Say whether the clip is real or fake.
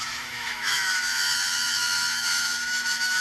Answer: fake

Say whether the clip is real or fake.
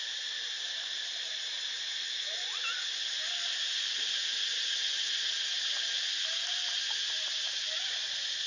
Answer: real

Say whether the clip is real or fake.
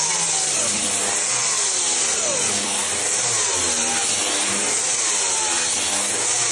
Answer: real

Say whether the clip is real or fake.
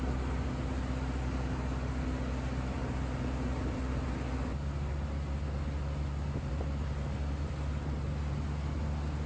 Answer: real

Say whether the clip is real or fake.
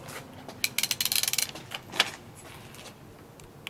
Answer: real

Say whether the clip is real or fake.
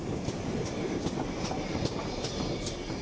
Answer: real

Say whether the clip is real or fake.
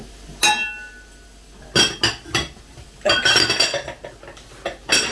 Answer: real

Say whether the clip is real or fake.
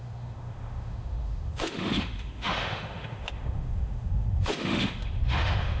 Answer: fake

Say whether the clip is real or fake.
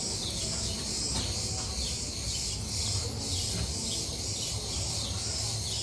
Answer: real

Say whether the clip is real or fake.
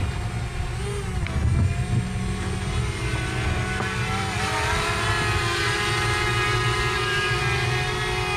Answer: real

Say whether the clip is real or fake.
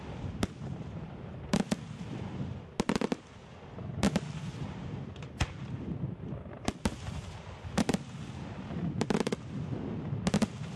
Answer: real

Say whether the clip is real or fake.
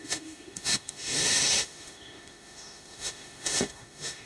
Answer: fake